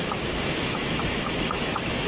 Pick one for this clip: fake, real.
fake